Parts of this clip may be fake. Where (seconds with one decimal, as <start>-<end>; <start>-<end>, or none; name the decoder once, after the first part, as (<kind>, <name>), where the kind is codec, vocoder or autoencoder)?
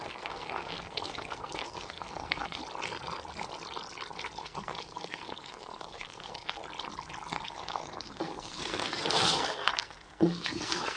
0.0-2.6 (codec, SNAC); 4.4-6.6; 7.3-11.0